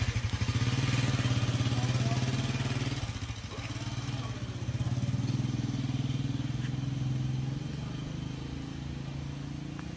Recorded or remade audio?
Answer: recorded